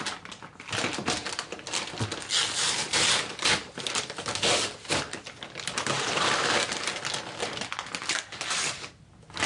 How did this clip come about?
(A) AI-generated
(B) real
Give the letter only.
B